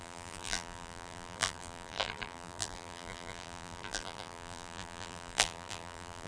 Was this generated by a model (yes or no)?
yes